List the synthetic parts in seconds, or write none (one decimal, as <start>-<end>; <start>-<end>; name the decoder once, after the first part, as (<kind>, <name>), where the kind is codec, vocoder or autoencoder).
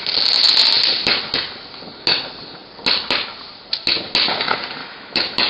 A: 4.8-5.5 (autoencoder, DAC-VAE)